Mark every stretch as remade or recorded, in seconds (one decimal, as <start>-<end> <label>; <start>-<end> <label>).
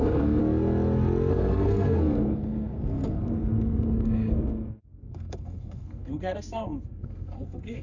0.0-0.4 remade; 0.4-1.3 recorded; 1.3-7.8 remade